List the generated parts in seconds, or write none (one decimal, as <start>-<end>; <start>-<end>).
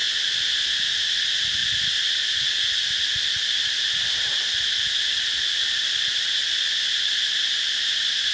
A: none